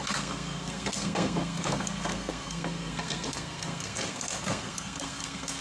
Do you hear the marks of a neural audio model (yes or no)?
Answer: yes